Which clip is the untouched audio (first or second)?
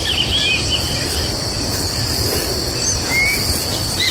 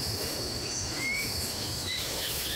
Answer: first